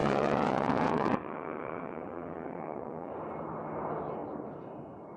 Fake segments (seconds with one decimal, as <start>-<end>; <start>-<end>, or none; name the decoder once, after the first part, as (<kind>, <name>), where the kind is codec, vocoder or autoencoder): 0.0-3.1 (vocoder, WaveNeXt)